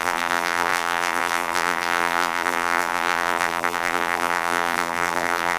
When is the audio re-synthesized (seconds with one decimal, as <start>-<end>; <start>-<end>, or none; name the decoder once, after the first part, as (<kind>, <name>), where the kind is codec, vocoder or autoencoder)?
0.0-5.6 (vocoder, BigVGAN v2)